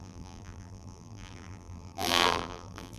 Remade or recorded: remade